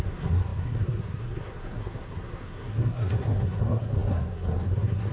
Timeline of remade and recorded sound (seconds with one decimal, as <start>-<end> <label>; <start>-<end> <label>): 0.0-5.1 remade